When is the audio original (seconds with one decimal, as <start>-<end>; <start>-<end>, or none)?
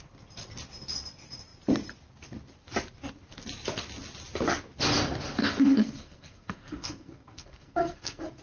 0.0-5.4